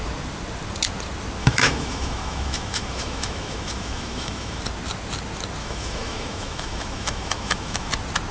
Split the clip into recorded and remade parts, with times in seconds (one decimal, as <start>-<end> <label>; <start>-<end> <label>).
0.0-1.4 recorded; 1.4-4.6 remade; 4.6-5.6 recorded; 5.6-7.9 remade; 7.9-8.3 recorded